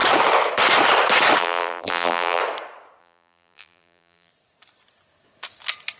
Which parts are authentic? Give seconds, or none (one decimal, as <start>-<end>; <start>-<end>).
0.0-1.4; 2.4-3.0; 4.3-6.0